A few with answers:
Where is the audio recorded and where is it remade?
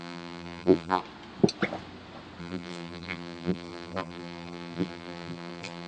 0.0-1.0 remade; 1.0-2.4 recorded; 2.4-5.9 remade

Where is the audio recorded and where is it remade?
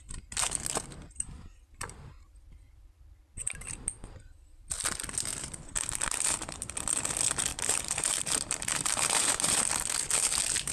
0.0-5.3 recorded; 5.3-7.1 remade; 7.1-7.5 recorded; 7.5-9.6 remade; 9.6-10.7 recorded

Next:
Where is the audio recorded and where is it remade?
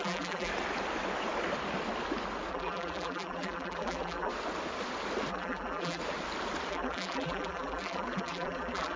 0.0-0.5 remade; 0.5-2.5 recorded; 2.5-4.3 remade; 4.3-5.3 recorded; 5.3-6.0 remade; 6.0-6.7 recorded; 6.7-9.0 remade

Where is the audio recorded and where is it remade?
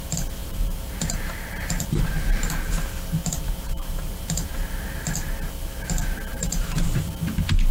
0.0-0.4 recorded; 0.4-2.1 remade; 2.1-3.2 recorded; 3.2-4.5 remade; 4.5-6.3 recorded; 6.3-7.1 remade; 7.1-7.7 recorded